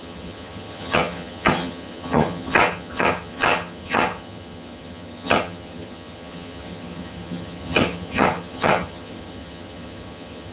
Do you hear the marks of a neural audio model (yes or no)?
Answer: yes